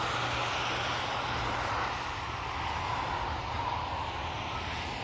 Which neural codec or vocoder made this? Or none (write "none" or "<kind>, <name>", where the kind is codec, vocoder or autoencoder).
none